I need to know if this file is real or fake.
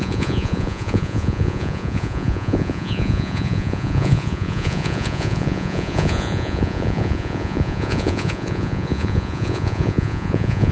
fake